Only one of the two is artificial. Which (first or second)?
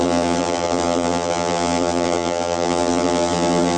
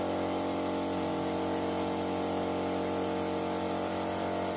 first